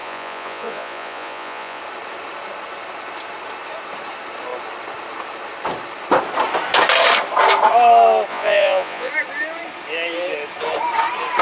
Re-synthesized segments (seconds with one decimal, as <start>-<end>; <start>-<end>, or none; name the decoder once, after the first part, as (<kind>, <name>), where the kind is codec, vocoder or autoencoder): 0.0-1.8 (vocoder, Vocos); 8.3-9.1